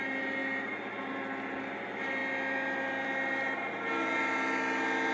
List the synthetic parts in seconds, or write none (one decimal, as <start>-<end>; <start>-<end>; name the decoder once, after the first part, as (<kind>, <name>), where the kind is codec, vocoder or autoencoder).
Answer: none